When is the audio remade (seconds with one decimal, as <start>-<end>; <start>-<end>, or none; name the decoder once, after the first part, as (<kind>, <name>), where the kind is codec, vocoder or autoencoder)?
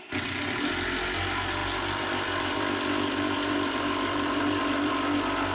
1.6-4.9 (vocoder, BigVGAN v2)